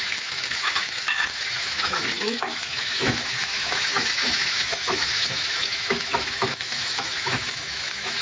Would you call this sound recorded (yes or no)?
no